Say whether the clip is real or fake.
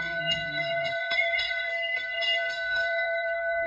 fake